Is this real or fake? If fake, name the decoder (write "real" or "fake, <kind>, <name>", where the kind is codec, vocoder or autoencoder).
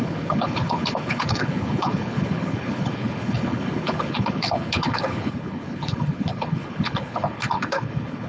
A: fake, codec, HILCodec